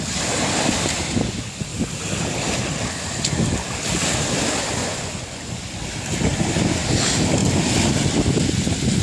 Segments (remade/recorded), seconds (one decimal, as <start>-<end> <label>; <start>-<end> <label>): 0.0-4.8 recorded; 4.8-5.8 remade; 5.8-9.0 recorded